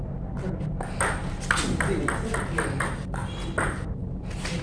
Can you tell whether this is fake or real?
real